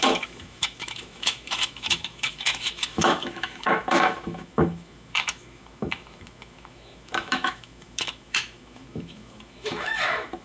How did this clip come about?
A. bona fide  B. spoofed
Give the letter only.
B